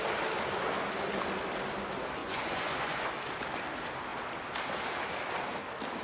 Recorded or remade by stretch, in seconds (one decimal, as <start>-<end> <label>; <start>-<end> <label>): 0.0-2.2 recorded; 2.2-3.1 remade; 3.1-6.0 recorded